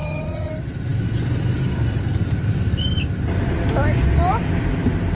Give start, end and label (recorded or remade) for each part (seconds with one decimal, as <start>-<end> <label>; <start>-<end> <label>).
0.0-0.5 remade; 0.5-5.1 recorded